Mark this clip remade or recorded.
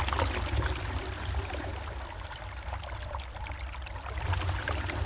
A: remade